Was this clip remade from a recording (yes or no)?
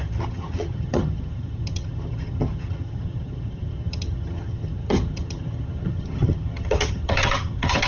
yes